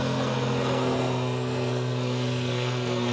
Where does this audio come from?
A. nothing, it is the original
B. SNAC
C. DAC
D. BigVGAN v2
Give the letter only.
B